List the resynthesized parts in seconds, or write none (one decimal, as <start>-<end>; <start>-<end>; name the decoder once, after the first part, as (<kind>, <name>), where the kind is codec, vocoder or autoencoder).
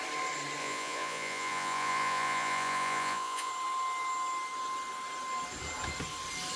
0.6-3.5 (vocoder, Vocos)